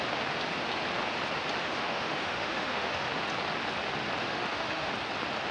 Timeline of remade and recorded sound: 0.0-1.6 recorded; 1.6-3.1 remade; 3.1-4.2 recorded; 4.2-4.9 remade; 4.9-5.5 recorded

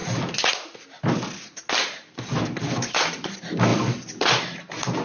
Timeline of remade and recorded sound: 0.0-3.7 recorded; 3.7-4.3 remade; 4.3-5.0 recorded

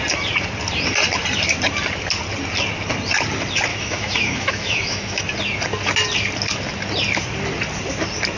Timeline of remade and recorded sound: 0.0-3.7 recorded; 3.7-5.2 remade; 5.2-8.4 recorded

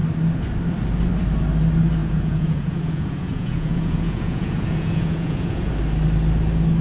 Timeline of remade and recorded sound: 0.0-2.0 recorded; 2.0-5.7 remade; 5.7-6.8 recorded

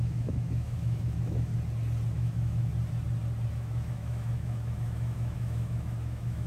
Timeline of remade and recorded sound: 0.0-1.5 remade; 1.5-2.1 recorded; 2.1-2.7 remade; 2.7-3.5 recorded; 3.5-6.5 remade

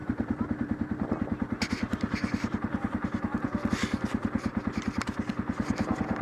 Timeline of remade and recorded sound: 0.0-3.7 remade; 3.7-4.5 recorded; 4.5-5.3 remade; 5.3-6.2 recorded